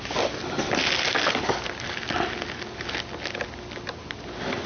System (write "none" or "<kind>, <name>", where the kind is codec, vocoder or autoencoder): none